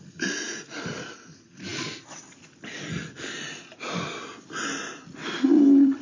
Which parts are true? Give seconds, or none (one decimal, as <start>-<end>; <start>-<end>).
0.0-1.7; 4.6-6.0